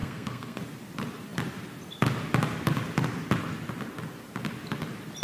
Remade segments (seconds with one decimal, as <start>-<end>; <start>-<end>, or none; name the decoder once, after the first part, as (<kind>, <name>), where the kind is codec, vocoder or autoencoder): 0.0-0.6 (codec, SNAC)